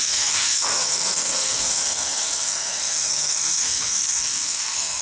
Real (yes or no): no